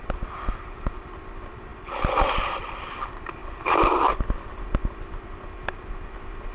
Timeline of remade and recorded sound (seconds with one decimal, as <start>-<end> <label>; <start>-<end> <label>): 0.0-1.7 recorded; 1.7-2.8 remade; 2.8-3.4 recorded; 3.4-4.6 remade; 4.6-6.5 recorded